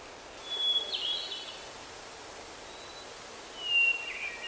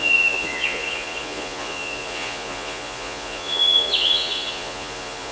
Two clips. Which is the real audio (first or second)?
first